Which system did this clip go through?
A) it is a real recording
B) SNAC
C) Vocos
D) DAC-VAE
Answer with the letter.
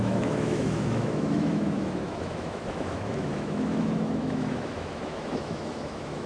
D